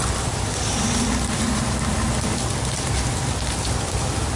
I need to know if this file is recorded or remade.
recorded